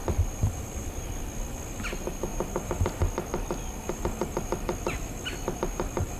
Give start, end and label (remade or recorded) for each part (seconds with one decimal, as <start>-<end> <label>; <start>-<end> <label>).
0.0-6.2 recorded